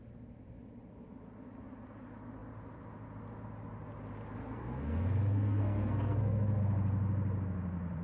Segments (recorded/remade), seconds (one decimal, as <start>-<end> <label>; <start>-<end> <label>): 0.0-4.4 recorded; 4.4-6.6 remade; 6.6-8.0 recorded